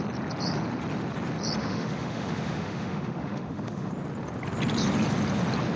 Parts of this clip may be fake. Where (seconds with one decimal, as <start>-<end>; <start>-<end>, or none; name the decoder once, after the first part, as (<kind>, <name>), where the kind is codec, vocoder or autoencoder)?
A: 1.6-3.9 (autoencoder, DAC-VAE)